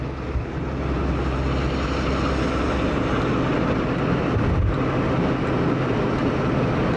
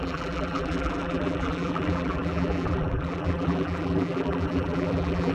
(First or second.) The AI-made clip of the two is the second